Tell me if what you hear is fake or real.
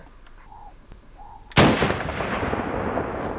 real